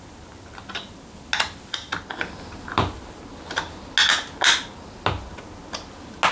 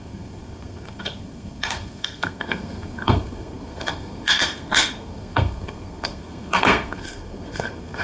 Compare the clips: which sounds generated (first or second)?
second